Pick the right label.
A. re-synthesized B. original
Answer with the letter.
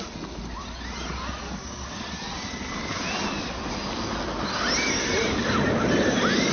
B